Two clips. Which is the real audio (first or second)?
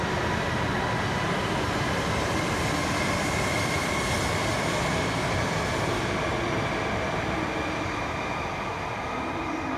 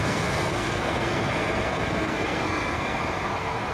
first